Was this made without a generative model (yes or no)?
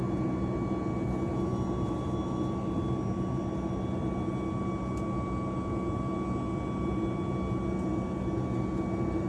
yes